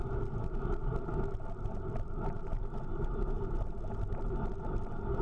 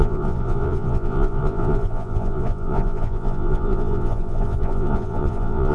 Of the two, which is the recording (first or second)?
first